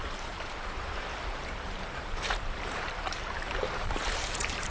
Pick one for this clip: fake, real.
fake